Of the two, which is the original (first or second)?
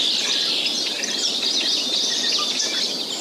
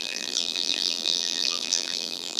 first